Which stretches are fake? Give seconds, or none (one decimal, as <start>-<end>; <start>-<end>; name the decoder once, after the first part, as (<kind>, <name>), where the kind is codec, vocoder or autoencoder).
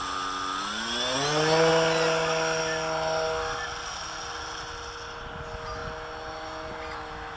none